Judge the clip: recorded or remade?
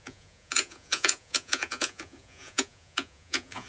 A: remade